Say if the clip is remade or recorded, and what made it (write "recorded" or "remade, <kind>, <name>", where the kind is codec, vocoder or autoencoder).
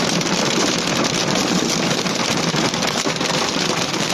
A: recorded